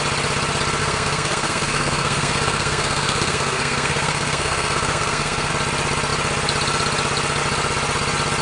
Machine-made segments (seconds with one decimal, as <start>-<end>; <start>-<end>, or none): 0.8-5.5